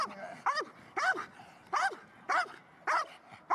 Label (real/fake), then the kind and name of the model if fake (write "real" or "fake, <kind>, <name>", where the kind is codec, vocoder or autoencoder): real